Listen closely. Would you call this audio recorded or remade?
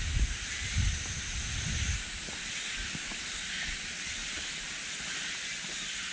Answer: recorded